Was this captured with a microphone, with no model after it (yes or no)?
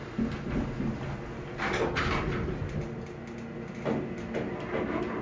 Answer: yes